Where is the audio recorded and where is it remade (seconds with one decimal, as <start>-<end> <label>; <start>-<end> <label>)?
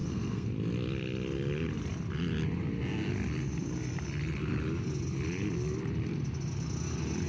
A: 0.0-0.5 remade; 0.5-7.3 recorded